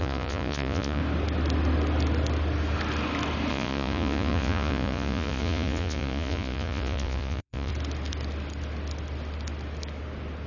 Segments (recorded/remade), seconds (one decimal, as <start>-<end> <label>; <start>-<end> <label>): 0.0-1.0 remade; 1.0-3.5 recorded; 3.5-7.7 remade; 7.7-10.5 recorded